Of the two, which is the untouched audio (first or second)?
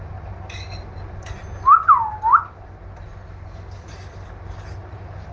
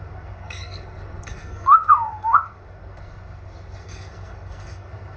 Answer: first